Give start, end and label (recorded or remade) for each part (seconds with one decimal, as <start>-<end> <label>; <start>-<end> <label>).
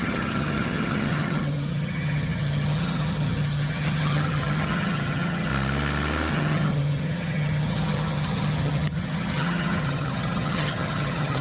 0.0-5.5 remade; 5.5-6.3 recorded; 6.3-11.4 remade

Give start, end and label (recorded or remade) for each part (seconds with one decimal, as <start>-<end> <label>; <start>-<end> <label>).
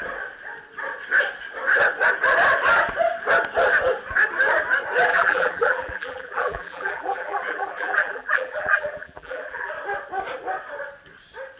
0.0-5.1 recorded; 5.1-9.7 remade; 9.7-11.6 recorded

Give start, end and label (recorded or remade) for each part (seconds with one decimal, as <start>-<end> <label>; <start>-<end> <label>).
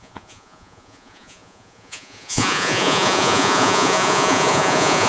0.0-5.1 remade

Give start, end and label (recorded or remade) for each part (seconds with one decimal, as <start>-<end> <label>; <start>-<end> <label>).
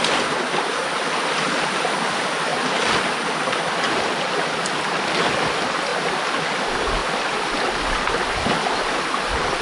0.0-9.6 recorded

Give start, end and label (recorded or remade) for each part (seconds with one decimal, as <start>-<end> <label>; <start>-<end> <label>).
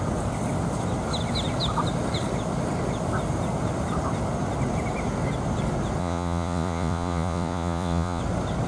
0.0-6.0 recorded; 6.0-8.2 remade; 8.2-8.7 recorded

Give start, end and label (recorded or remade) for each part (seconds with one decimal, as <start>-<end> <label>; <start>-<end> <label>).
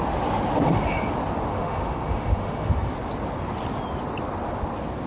0.0-1.5 recorded; 1.5-2.9 remade; 2.9-5.1 recorded